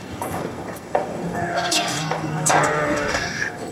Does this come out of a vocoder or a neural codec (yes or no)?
yes